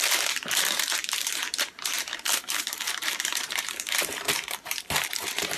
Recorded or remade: remade